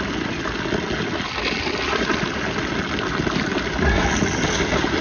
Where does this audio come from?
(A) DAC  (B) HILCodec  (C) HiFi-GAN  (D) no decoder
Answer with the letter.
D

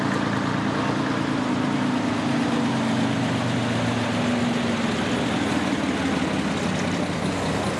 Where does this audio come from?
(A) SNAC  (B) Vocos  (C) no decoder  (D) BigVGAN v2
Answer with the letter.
C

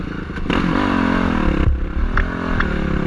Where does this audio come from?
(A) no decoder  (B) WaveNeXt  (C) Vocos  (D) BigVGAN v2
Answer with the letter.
A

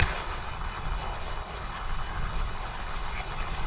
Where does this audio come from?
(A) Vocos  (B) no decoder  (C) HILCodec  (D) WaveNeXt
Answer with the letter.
C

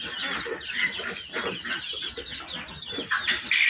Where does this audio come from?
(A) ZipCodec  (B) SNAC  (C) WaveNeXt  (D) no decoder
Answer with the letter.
D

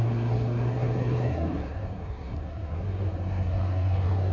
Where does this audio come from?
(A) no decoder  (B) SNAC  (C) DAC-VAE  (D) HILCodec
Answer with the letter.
B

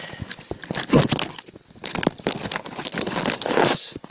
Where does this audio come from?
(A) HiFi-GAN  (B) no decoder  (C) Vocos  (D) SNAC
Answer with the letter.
B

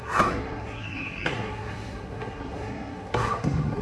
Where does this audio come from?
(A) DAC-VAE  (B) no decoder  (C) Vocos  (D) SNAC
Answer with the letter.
D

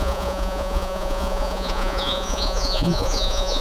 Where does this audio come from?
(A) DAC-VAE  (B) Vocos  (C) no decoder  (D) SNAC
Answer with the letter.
B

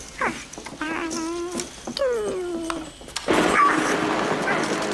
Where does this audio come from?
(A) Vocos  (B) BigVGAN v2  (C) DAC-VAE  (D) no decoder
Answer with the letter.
D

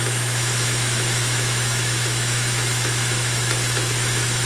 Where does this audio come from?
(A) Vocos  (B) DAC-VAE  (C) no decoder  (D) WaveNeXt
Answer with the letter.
B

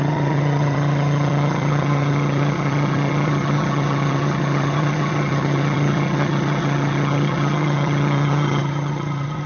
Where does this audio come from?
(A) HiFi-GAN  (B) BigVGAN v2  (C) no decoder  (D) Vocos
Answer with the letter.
A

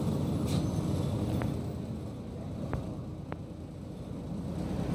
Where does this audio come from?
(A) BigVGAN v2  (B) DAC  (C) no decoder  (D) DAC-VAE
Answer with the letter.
C